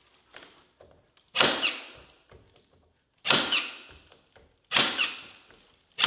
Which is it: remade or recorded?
recorded